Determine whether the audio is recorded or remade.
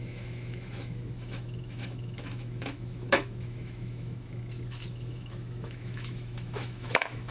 remade